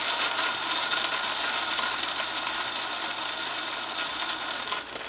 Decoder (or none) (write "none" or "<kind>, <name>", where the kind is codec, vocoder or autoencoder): none